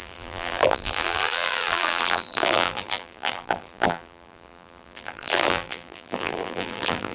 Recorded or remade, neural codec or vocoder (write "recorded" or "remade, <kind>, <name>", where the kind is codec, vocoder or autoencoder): remade, vocoder, BigVGAN v2